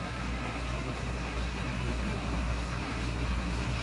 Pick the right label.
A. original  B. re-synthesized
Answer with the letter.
B